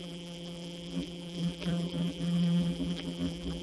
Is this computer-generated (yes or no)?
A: yes